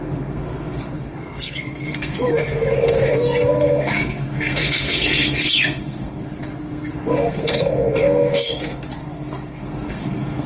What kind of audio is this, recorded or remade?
remade